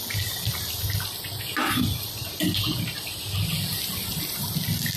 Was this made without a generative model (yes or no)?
yes